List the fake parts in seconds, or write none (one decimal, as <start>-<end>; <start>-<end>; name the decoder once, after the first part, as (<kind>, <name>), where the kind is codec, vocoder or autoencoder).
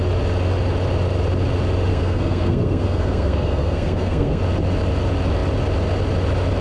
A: 1.9-4.4 (codec, SNAC)